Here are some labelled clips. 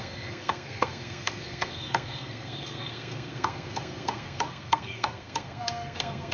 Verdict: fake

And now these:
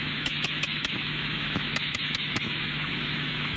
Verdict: fake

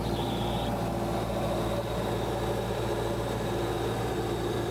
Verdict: real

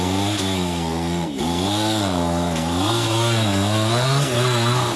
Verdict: fake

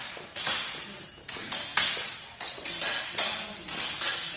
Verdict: real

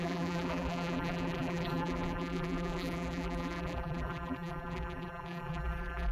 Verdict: fake